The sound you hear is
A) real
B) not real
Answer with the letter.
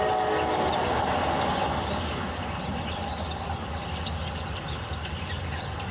A